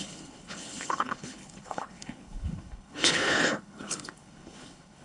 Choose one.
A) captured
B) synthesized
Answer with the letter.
B